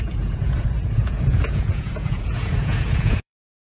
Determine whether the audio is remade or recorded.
remade